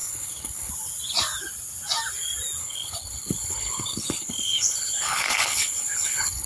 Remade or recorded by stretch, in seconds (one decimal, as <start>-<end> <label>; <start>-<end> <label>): 0.0-0.7 remade; 0.7-2.6 recorded; 2.6-6.5 remade